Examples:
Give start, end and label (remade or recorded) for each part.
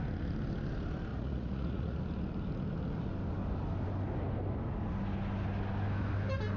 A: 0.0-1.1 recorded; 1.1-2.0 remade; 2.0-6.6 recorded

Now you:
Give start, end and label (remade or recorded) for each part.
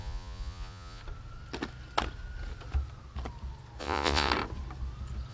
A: 0.0-1.0 remade; 1.0-3.8 recorded; 3.8-4.3 remade; 4.3-5.3 recorded